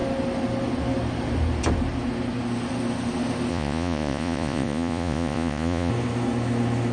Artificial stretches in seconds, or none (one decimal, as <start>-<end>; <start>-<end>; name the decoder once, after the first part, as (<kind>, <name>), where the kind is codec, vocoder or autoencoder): 3.5-5.9 (vocoder, Vocos)